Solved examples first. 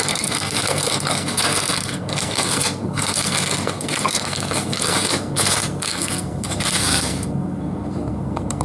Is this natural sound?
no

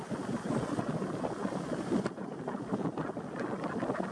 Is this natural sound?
yes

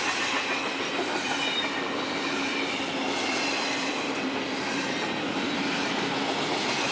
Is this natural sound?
yes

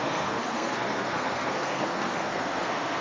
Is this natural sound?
no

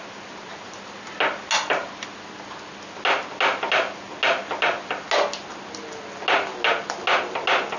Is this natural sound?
yes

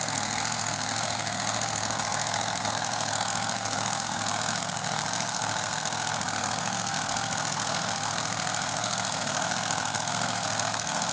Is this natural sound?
no